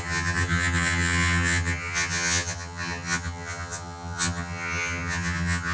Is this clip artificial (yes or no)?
yes